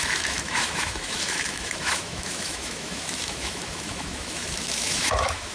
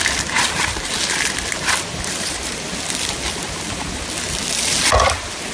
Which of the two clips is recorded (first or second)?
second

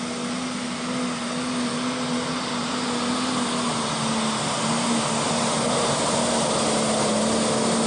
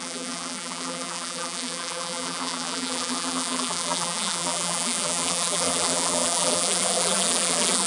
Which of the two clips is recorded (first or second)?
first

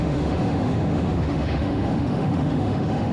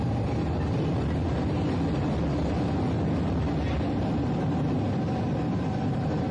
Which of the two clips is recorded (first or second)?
second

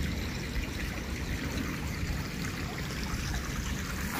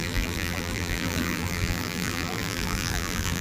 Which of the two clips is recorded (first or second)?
first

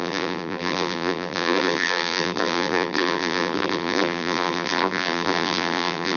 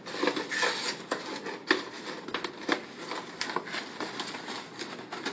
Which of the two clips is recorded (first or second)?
second